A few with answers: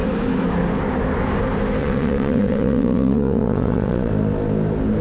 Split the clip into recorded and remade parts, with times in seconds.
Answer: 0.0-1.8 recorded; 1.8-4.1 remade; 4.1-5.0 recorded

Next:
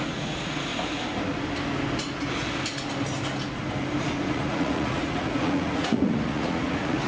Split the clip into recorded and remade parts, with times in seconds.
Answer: 0.0-0.7 remade; 0.7-4.3 recorded; 4.3-7.1 remade

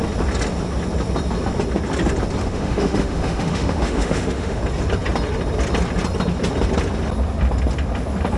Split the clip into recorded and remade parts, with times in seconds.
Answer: 0.0-2.4 recorded; 2.4-4.6 remade; 4.6-8.4 recorded

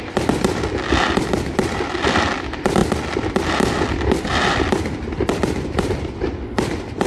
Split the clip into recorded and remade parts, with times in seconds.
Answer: 0.0-7.1 recorded

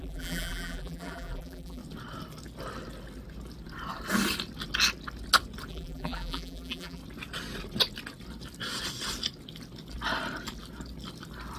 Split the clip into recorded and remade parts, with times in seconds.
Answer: 0.0-1.8 remade; 1.8-5.7 recorded; 5.7-7.0 remade; 7.0-11.6 recorded

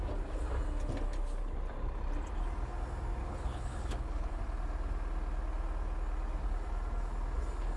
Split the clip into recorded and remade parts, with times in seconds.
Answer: 0.0-3.2 recorded; 3.2-4.4 remade; 4.4-7.8 recorded